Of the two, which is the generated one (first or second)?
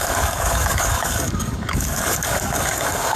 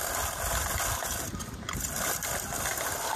first